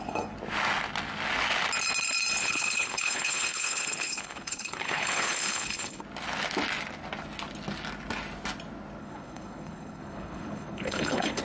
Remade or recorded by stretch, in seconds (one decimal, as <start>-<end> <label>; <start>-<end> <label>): 0.0-2.4 recorded; 2.4-6.0 remade; 6.0-9.0 recorded; 9.0-11.4 remade